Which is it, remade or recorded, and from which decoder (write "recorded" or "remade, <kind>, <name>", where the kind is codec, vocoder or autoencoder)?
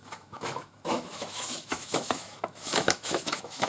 remade, autoencoder, DAC-VAE